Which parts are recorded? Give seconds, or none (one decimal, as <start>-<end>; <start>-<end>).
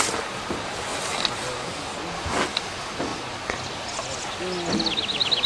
0.0-5.5